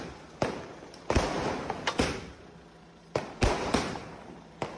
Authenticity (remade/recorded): recorded